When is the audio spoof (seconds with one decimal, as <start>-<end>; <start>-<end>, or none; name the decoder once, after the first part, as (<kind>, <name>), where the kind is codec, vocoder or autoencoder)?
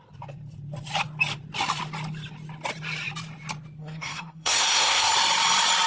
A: 3.8-5.1 (codec, SNAC)